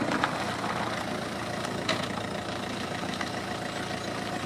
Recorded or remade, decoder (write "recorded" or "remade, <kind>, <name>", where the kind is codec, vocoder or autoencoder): recorded